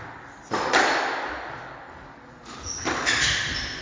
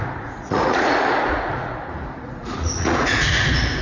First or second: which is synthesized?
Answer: second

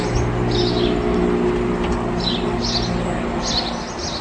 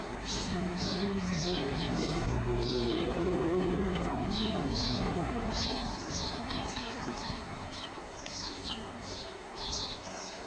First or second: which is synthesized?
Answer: second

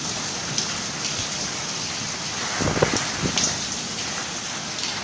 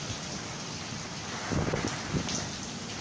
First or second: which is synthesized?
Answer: first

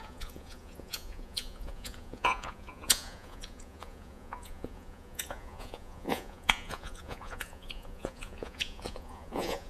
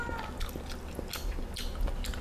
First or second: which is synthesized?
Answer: first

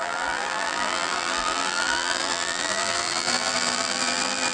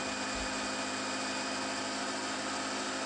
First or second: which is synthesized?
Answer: first